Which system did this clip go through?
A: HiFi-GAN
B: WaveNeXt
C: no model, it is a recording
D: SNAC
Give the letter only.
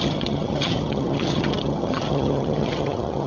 A